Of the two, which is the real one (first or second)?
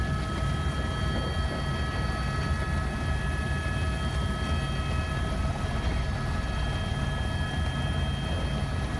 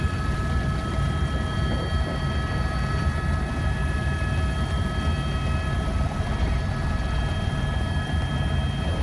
first